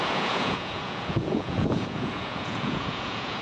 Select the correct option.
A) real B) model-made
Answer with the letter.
B